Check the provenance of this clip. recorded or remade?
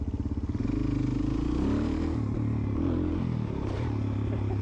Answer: recorded